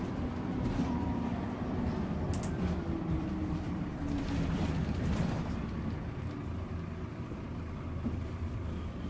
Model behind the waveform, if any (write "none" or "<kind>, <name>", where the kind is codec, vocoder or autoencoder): vocoder, BigVGAN v2